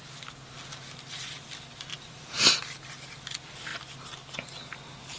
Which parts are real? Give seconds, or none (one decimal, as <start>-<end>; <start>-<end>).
0.0-1.9; 2.5-5.2